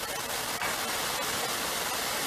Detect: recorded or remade recorded